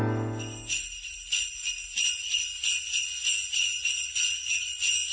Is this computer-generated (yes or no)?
no